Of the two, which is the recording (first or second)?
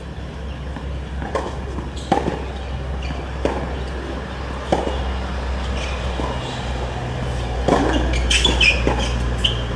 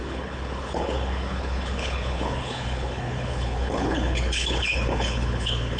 first